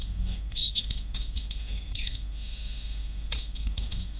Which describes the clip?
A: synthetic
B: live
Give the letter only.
A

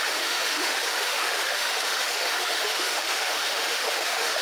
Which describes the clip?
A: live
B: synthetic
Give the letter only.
B